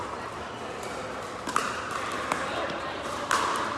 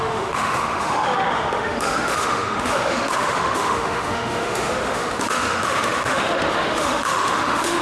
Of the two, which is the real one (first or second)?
first